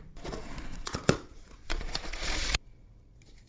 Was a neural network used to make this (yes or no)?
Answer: yes